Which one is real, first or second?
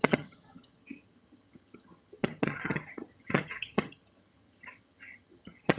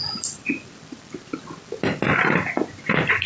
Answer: second